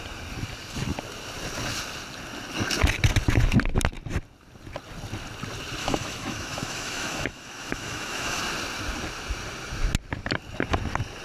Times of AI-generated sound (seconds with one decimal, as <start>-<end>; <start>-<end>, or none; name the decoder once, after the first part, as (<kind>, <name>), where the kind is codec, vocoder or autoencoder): 5.8-8.4 (autoencoder, DAC-VAE)